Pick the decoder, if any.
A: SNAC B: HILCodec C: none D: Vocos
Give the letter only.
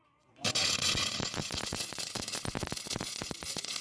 D